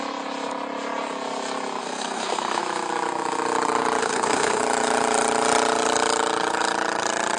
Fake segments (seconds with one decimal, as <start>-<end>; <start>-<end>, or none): 1.8-2.6; 4.0-4.6